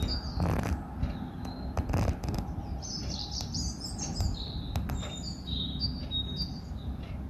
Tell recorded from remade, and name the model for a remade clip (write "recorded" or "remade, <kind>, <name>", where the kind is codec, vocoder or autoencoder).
recorded